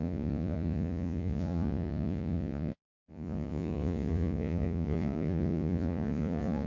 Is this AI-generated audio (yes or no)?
yes